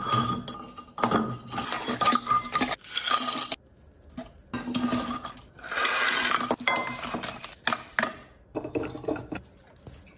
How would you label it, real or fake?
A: real